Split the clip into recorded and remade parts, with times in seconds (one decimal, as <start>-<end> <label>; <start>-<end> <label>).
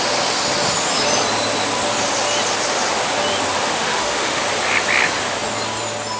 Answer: 0.0-3.6 recorded; 3.6-4.4 remade; 4.4-6.2 recorded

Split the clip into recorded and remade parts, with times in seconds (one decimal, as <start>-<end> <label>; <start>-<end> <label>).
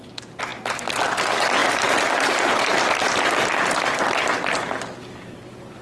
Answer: 0.0-5.8 recorded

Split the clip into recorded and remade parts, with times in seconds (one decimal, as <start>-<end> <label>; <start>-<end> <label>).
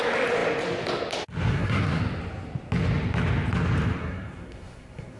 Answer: 0.0-1.5 recorded; 1.5-2.0 remade; 2.0-4.0 recorded; 4.0-5.2 remade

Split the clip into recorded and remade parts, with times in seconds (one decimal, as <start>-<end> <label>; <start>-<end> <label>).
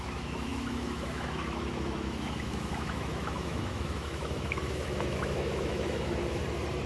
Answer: 0.0-6.4 remade; 6.4-6.9 recorded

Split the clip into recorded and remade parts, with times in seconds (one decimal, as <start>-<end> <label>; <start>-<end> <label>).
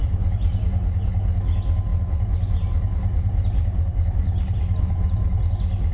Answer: 0.0-1.1 remade; 1.1-1.9 recorded; 1.9-5.4 remade; 5.4-5.9 recorded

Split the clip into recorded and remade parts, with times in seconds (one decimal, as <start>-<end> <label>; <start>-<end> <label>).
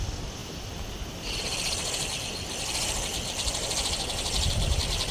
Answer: 0.0-5.1 recorded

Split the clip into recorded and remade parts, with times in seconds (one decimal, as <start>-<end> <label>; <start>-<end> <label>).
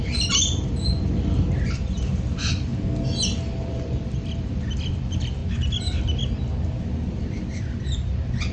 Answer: 0.0-2.7 remade; 2.7-3.7 recorded; 3.7-5.4 remade; 5.4-6.8 recorded; 6.8-8.5 remade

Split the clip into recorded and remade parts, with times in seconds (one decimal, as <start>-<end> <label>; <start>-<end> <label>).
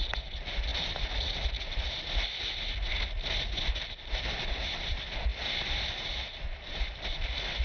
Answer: 0.0-7.6 recorded